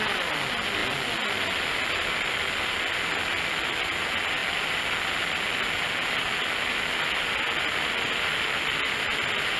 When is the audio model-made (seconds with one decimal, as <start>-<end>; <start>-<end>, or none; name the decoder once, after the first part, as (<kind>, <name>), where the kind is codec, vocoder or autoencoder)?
none